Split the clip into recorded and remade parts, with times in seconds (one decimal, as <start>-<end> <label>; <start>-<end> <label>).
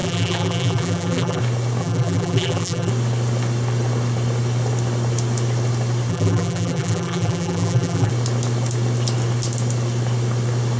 0.0-1.4 remade; 1.4-1.8 recorded; 1.8-2.9 remade; 2.9-6.1 recorded; 6.1-8.1 remade; 8.1-10.8 recorded